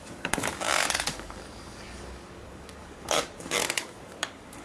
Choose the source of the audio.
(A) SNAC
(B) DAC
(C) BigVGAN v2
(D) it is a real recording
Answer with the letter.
B